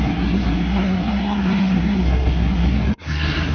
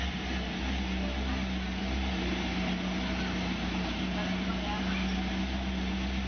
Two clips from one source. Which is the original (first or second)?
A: second